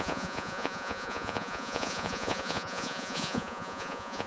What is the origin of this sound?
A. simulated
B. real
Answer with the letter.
A